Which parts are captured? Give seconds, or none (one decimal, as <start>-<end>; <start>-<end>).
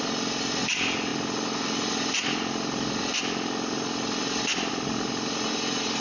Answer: 0.0-6.0